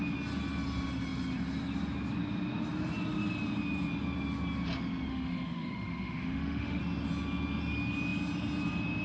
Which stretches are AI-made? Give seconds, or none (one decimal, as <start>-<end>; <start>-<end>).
5.1-6.8